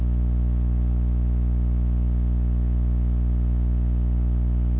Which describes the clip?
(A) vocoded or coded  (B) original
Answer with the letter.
B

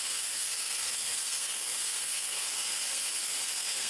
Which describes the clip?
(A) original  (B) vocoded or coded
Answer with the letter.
B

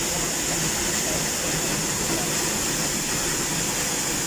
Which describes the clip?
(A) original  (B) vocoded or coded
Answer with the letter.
A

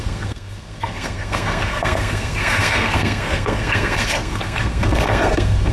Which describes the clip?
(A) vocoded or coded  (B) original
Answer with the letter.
A